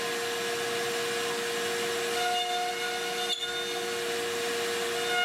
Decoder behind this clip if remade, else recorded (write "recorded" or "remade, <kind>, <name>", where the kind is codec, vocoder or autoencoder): recorded